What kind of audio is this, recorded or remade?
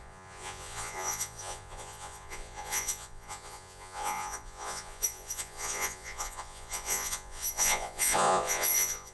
remade